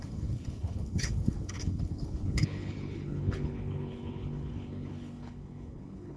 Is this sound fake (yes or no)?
yes